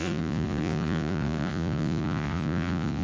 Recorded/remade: remade